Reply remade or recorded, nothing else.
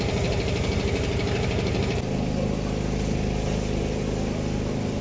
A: recorded